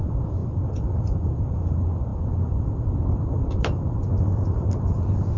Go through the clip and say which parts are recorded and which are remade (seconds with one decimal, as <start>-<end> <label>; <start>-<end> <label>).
0.0-2.1 recorded; 2.1-5.4 remade